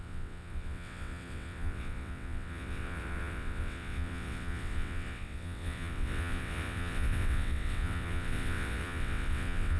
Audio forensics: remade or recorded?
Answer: remade